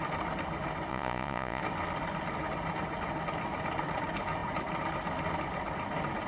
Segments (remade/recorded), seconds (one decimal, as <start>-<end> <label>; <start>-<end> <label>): 0.0-0.9 recorded; 0.9-1.6 remade; 1.6-6.3 recorded